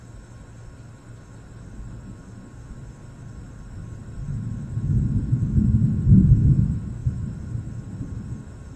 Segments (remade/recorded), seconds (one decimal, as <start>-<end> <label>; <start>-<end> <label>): 0.0-8.8 recorded